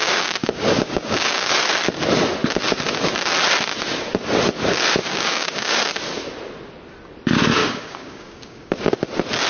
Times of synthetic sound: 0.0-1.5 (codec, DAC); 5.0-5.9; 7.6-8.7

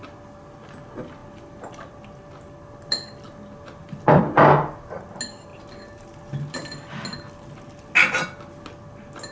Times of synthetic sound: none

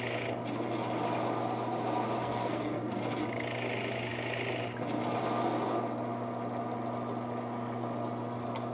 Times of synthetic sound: 2.2-3.0 (codec, SNAC)